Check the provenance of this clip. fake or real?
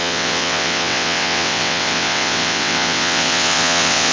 fake